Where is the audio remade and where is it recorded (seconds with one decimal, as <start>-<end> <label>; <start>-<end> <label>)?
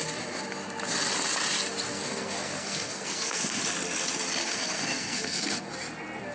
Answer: 0.0-1.9 recorded; 1.9-3.6 remade; 3.6-4.4 recorded; 4.4-5.7 remade; 5.7-6.3 recorded